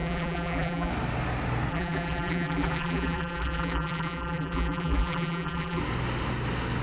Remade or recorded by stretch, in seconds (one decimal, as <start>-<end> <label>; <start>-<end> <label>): 0.0-0.9 remade; 0.9-1.7 recorded; 1.7-5.8 remade; 5.8-6.8 recorded